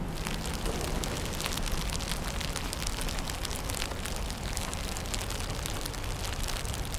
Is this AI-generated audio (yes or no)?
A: no